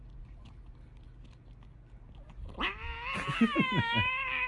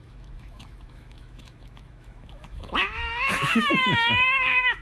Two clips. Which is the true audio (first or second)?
first